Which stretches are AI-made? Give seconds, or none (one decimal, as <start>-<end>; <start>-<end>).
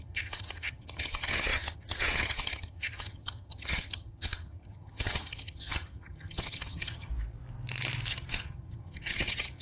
0.0-7.1; 8.1-9.6